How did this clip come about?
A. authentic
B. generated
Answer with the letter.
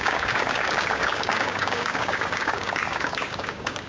B